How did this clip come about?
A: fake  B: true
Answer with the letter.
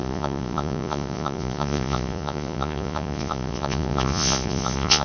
A